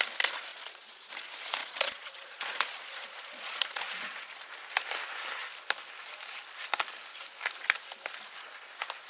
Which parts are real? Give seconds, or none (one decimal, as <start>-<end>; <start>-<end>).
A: 0.0-0.5; 1.1-1.6; 4.4-9.1